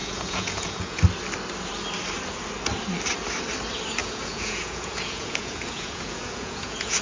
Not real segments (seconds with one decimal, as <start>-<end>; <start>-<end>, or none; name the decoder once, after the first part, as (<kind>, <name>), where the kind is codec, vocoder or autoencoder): 0.0-1.0 (vocoder, Vocos); 4.0-7.0